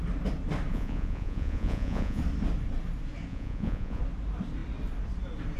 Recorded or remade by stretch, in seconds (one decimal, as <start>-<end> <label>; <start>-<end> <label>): 0.0-0.7 recorded; 0.7-2.2 remade; 2.2-3.3 recorded; 3.3-4.0 remade; 4.0-5.6 recorded